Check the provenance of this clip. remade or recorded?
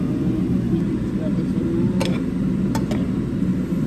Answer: recorded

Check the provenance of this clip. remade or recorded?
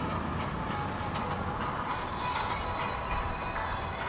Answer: recorded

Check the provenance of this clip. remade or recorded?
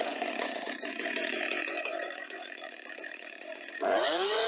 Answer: remade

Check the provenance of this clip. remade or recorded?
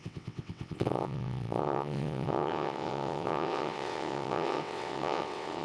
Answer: remade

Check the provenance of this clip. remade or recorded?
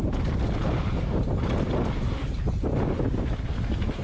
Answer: recorded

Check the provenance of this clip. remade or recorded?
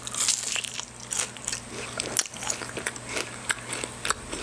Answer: recorded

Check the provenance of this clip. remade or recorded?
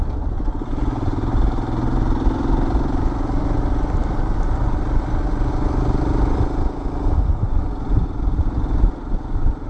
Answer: recorded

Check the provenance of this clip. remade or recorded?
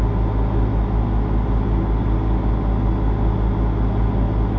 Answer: recorded